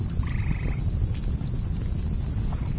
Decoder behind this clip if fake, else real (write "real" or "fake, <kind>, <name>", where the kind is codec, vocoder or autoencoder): real